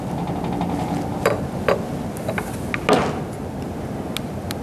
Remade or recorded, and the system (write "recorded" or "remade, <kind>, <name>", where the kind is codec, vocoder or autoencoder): recorded